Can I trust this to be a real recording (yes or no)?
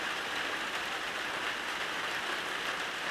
yes